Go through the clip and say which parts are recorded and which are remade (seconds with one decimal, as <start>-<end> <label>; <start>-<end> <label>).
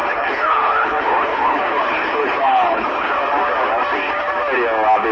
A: 0.0-3.1 remade; 3.1-5.1 recorded